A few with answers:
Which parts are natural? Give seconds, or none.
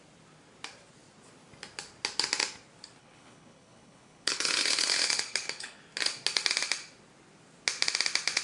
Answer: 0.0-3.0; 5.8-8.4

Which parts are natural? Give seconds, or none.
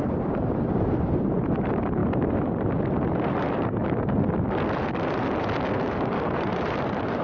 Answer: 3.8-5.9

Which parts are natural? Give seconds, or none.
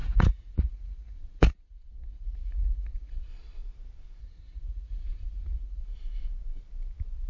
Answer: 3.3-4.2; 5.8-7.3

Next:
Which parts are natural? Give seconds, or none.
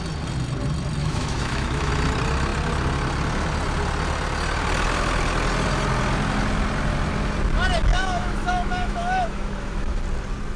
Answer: 0.0-1.0; 1.9-7.9; 10.0-10.6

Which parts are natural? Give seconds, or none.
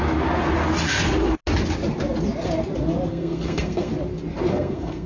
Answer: 0.0-3.1; 3.9-4.5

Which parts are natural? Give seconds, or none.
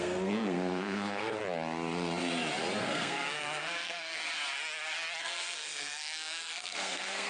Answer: 1.4-2.8; 4.2-5.2